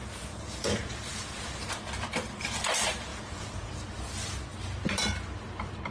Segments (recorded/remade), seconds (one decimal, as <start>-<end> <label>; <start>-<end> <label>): 0.0-1.7 remade; 1.7-3.1 recorded; 3.1-3.7 remade; 3.7-5.9 recorded